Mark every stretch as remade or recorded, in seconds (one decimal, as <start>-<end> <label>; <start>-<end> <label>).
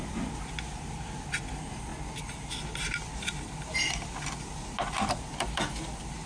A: 0.0-6.3 recorded